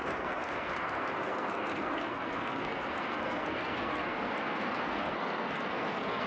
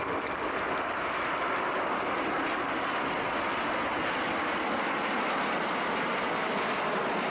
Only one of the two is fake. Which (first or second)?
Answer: first